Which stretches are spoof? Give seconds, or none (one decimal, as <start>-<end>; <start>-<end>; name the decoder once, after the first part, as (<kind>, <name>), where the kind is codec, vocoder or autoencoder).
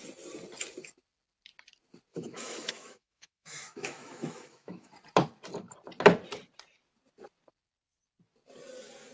2.1-4.9 (autoencoder, DAC-VAE)